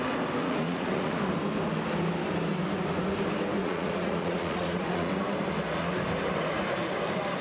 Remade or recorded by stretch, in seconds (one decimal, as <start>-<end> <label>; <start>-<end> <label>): 0.0-0.4 recorded; 0.4-1.2 remade; 1.2-3.6 recorded; 3.6-5.1 remade; 5.1-7.4 recorded